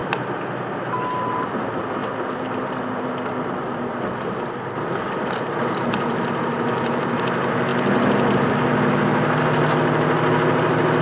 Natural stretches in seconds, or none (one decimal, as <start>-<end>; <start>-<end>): 0.0-11.0